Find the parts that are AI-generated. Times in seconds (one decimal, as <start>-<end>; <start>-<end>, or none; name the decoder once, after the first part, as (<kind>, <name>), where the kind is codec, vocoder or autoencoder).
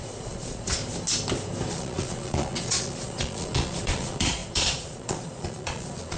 0.0-0.8 (vocoder, Vocos); 1.7-6.2